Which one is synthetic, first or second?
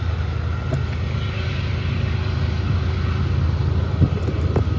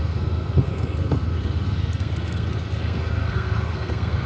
second